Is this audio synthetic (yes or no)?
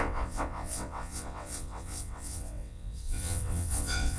yes